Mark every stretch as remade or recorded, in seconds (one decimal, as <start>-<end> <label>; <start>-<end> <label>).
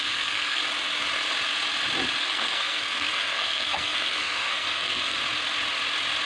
0.0-0.6 remade; 0.6-2.2 recorded; 2.2-5.2 remade; 5.2-6.3 recorded